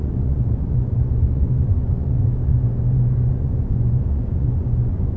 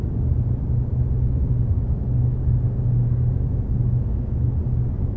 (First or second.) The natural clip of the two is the second